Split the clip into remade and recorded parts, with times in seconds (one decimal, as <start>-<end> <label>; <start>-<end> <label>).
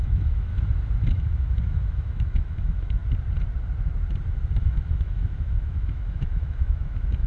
0.0-0.5 remade; 0.5-1.1 recorded; 1.1-3.0 remade; 3.0-4.6 recorded; 4.6-7.3 remade